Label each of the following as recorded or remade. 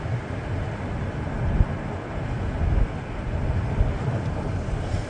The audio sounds recorded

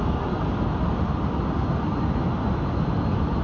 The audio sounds recorded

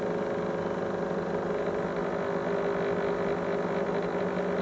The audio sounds recorded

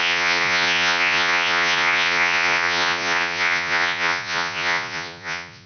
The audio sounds remade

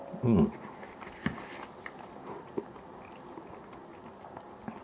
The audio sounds recorded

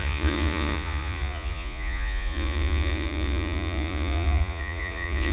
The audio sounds remade